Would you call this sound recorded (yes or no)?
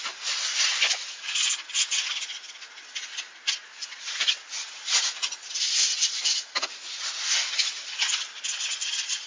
yes